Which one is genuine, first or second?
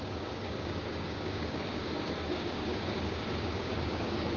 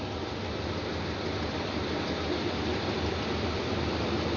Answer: second